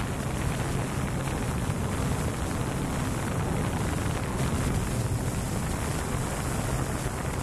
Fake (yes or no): no